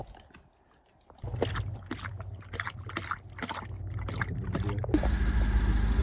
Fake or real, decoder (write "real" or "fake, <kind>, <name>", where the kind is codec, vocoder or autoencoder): real